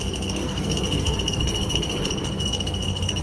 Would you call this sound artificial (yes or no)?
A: yes